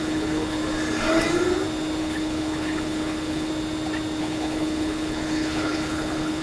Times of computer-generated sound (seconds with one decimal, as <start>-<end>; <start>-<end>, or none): 0.0-0.6; 2.0-3.5; 4.2-6.4